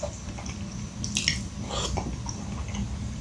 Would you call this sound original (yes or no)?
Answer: yes